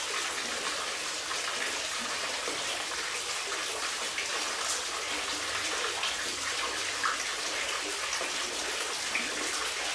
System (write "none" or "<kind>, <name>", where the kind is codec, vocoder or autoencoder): none